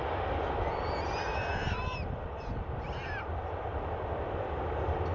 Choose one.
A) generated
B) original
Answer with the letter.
B